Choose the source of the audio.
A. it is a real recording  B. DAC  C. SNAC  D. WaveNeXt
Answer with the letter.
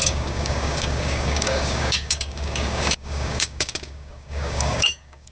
B